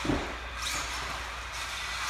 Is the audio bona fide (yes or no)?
yes